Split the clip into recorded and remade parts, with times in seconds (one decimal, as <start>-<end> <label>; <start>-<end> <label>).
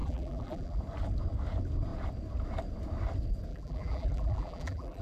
0.0-0.8 remade; 0.8-3.5 recorded; 3.5-5.0 remade